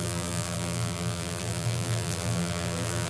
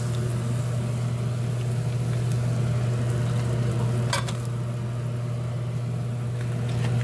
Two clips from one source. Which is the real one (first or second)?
second